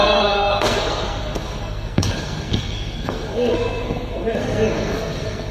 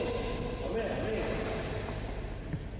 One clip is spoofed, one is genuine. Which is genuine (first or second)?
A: second